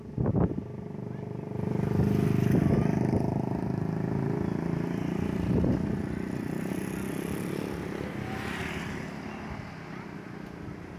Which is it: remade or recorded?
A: recorded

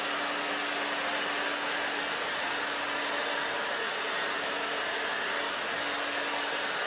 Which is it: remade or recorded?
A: recorded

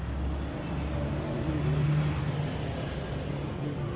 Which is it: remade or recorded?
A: recorded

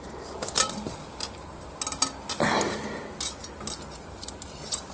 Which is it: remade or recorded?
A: recorded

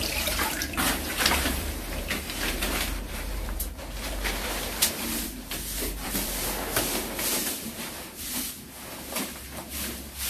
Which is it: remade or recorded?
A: remade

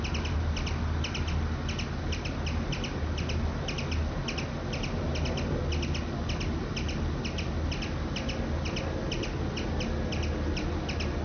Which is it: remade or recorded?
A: recorded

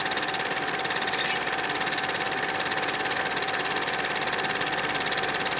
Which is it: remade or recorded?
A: recorded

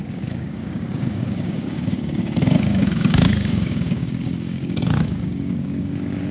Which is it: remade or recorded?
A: remade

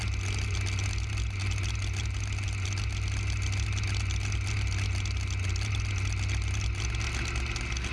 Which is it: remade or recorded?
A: recorded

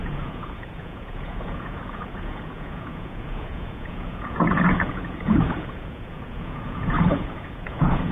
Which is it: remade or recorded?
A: remade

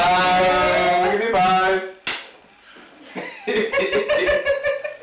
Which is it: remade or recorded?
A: recorded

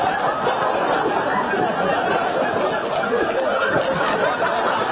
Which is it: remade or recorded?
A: recorded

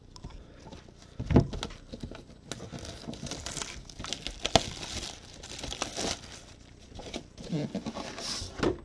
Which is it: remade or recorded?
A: recorded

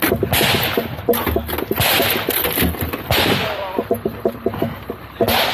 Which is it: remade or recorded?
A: recorded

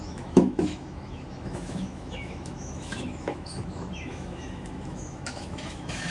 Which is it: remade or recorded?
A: remade